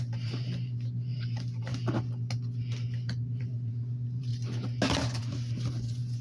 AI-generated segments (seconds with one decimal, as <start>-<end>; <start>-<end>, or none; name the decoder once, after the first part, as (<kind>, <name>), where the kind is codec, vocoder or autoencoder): 0.0-1.7 (vocoder, BigVGAN v2); 3.4-4.3; 5.2-6.2